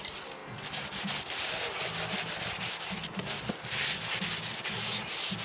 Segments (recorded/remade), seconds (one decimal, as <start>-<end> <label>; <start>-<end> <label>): 0.0-5.4 recorded